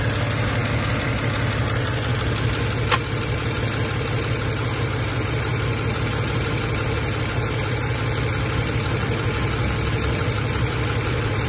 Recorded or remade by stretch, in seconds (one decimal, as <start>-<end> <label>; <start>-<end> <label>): 0.0-11.5 recorded